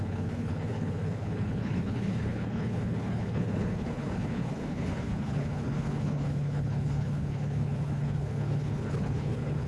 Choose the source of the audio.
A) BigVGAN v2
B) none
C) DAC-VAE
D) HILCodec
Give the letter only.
D